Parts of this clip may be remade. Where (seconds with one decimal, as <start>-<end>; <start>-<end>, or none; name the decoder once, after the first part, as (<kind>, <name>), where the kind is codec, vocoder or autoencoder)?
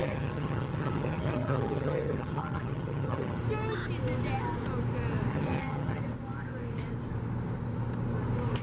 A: 0.0-3.4 (vocoder, HiFi-GAN); 5.3-6.0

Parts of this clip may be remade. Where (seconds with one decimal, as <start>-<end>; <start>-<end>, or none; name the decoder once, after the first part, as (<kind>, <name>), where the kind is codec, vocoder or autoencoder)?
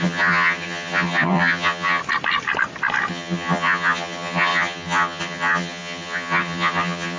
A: 0.0-2.0 (vocoder, HiFi-GAN); 3.1-7.2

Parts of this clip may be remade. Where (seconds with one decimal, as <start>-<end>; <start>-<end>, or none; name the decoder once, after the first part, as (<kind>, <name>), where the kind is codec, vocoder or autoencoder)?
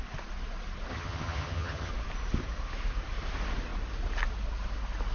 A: 0.9-1.9 (vocoder, HiFi-GAN)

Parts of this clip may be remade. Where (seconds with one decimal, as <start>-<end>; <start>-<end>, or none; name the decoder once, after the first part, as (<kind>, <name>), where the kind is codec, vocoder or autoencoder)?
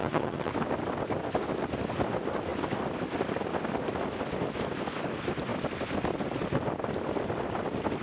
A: 0.0-0.5 (vocoder, HiFi-GAN)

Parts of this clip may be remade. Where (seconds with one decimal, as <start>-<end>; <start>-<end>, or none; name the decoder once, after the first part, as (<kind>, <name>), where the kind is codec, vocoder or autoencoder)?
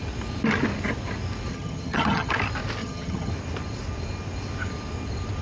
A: 1.5-2.3 (vocoder, HiFi-GAN); 2.8-3.3